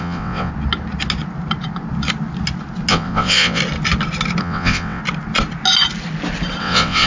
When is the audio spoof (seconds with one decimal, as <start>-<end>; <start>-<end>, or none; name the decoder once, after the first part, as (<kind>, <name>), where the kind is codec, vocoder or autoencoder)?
0.0-0.5 (vocoder, WaveNeXt); 2.9-3.6; 4.4-5.0; 6.6-7.1